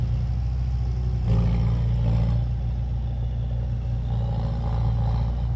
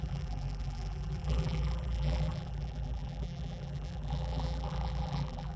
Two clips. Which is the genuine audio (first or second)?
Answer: first